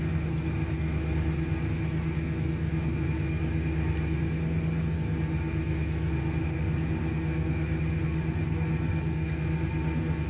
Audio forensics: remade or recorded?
recorded